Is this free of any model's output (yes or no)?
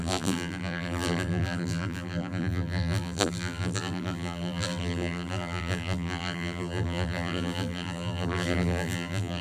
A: no